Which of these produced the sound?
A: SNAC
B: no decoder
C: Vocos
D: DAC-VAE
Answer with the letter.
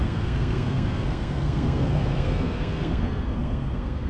A